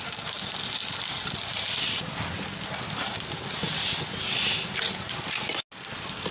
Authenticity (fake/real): real